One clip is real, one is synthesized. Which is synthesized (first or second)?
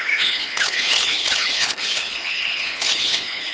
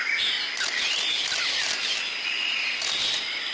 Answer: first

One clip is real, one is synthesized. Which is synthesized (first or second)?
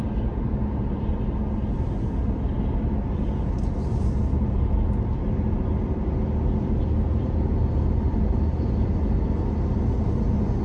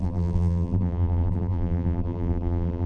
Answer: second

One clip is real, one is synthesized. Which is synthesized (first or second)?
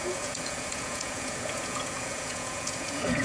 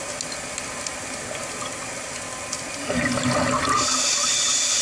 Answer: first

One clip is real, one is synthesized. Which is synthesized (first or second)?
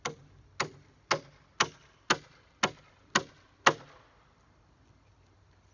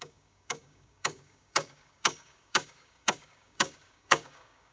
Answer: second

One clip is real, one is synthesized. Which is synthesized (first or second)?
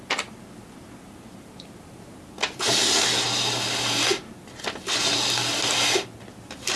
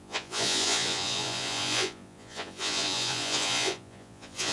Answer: second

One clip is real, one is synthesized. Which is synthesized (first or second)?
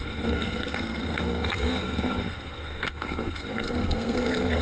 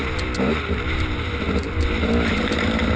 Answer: first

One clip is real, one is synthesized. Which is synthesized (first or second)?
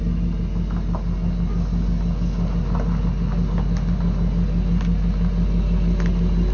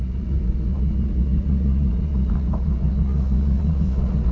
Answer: second